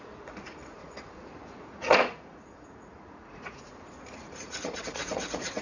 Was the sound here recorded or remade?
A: remade